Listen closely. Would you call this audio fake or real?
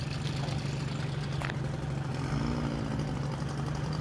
real